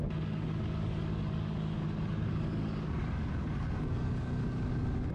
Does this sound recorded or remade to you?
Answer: remade